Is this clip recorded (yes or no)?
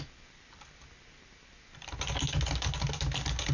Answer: yes